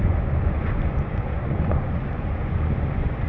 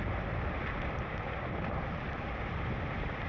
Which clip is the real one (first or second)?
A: second